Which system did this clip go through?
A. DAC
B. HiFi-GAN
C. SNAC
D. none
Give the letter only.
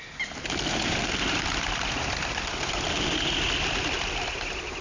D